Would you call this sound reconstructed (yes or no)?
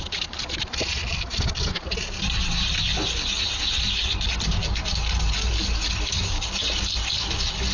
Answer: no